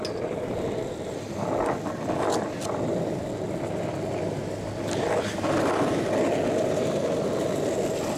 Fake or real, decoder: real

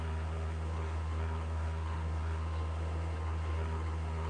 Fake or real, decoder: fake, codec, SNAC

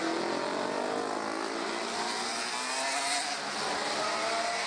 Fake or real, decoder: real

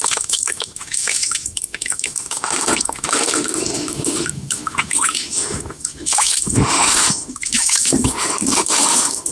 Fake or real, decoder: fake, autoencoder, DAC-VAE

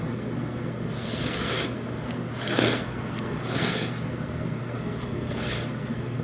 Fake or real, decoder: fake, codec, SNAC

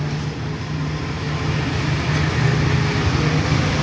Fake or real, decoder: real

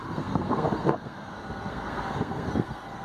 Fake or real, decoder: fake, codec, SNAC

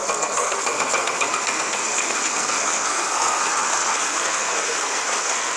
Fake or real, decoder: fake, codec, SNAC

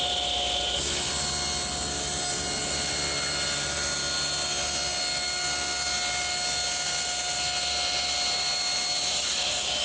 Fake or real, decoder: real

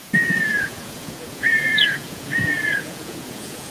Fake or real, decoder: fake, vocoder, Vocos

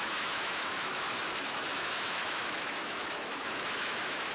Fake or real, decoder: fake, autoencoder, DAC-VAE